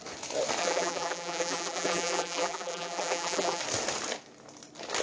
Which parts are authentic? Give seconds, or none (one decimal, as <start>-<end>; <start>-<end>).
0.0-0.6; 3.6-5.0